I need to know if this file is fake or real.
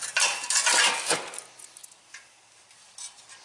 real